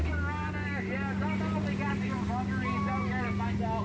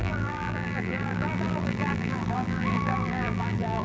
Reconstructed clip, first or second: second